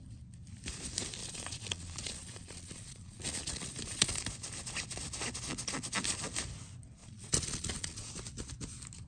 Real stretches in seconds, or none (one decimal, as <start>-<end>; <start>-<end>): 0.0-1.2; 4.2-7.0; 8.1-9.1